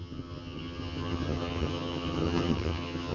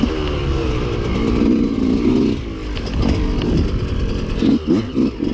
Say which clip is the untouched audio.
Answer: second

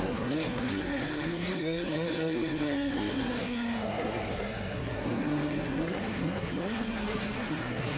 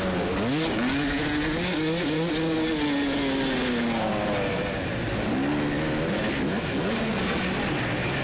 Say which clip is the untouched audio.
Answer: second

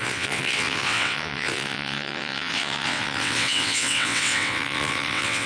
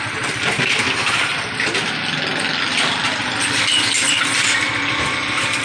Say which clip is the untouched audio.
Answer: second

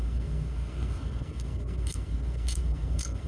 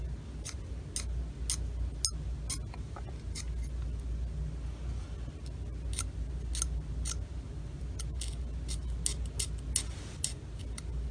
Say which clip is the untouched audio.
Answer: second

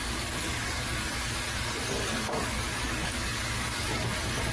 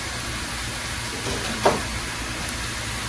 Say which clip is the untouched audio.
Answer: second